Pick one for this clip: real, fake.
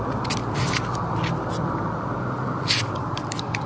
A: fake